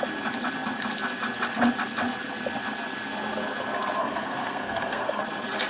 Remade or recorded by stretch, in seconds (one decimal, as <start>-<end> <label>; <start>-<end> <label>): 0.0-4.0 recorded; 4.0-5.2 remade; 5.2-5.7 recorded

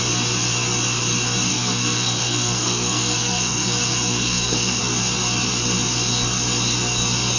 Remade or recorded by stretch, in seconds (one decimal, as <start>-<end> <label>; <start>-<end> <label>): 0.0-1.5 recorded; 1.5-4.8 remade; 4.8-7.4 recorded

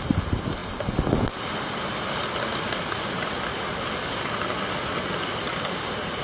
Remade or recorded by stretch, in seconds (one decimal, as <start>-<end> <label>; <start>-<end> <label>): 0.0-6.2 recorded